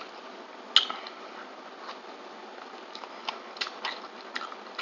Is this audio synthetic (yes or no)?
no